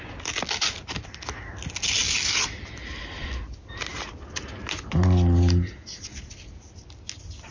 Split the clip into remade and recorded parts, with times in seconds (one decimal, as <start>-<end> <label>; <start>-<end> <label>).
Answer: 0.0-7.5 recorded